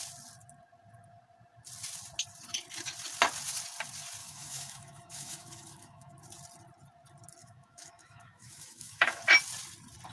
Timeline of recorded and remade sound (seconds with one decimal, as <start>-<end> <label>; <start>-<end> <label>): 0.0-4.2 recorded; 4.2-6.1 remade; 6.1-7.4 recorded; 7.4-9.2 remade; 9.2-10.1 recorded